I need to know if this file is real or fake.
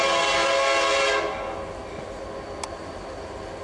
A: real